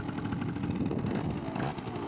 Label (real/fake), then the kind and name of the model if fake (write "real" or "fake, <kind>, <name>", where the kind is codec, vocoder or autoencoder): real